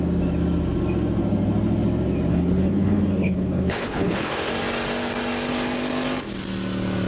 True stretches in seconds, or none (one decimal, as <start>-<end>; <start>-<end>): 0.0-2.3; 4.5-7.1